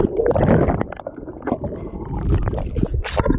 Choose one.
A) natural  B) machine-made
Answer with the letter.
A